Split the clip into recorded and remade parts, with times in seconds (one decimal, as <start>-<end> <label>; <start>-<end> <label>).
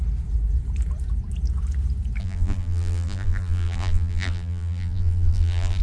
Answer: 0.0-2.2 recorded; 2.2-5.8 remade